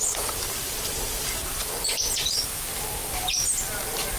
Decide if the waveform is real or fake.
fake